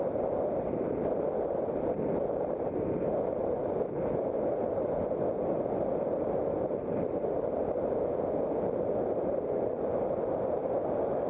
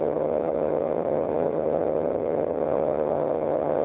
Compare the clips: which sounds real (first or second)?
first